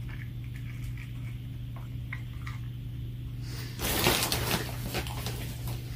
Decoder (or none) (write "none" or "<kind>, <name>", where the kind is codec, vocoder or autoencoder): none